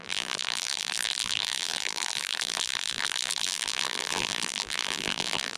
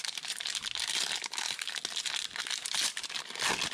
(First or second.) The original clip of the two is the second